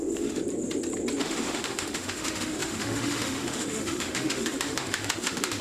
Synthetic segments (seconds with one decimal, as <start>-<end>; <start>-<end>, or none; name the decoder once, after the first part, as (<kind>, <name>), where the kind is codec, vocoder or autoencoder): 0.0-0.4 (autoencoder, DAC-VAE); 1.2-5.6